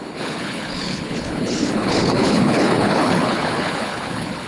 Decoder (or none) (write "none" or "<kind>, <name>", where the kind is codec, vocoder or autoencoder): codec, HILCodec